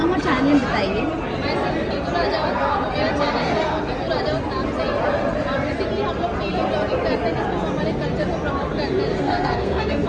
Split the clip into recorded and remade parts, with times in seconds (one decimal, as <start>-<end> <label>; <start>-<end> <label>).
0.0-9.1 recorded; 9.1-10.1 remade

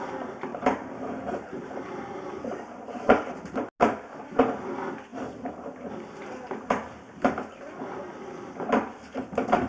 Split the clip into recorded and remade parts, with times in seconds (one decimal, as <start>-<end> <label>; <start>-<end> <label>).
0.0-0.5 recorded; 0.5-3.5 remade; 3.5-9.7 recorded

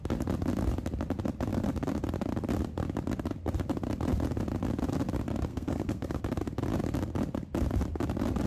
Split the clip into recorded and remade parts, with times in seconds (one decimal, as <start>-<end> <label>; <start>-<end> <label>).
0.0-5.5 recorded; 5.5-6.2 remade; 6.2-8.5 recorded

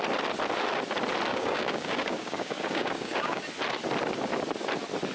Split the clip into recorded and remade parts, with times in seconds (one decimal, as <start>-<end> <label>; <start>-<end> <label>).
0.0-1.3 recorded; 1.3-3.4 remade; 3.4-5.1 recorded

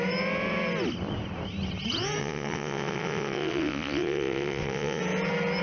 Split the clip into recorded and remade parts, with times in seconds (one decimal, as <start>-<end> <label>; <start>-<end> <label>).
0.0-2.2 recorded; 2.2-5.0 remade; 5.0-5.6 recorded

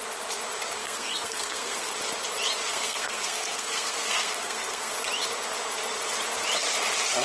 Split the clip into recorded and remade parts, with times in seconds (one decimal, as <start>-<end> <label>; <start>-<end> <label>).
0.0-0.8 recorded; 0.8-1.9 remade; 1.9-2.7 recorded; 2.7-4.9 remade; 4.9-7.2 recorded

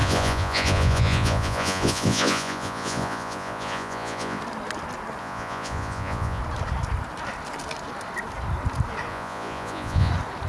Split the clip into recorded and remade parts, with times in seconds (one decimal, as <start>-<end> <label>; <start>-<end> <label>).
0.0-4.4 remade; 4.4-5.2 recorded; 5.2-6.4 remade; 6.4-9.1 recorded; 9.1-10.1 remade; 10.1-10.5 recorded

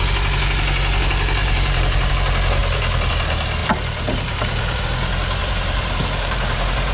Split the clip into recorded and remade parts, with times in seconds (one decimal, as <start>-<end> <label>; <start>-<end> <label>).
0.0-1.4 recorded; 1.4-2.1 remade; 2.1-2.6 recorded; 2.6-3.1 remade; 3.1-3.6 recorded; 3.6-4.8 remade; 4.8-5.4 recorded; 5.4-6.9 remade